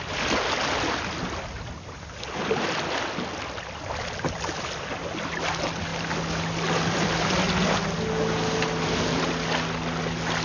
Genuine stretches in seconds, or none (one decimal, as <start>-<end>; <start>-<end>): 0.0-10.4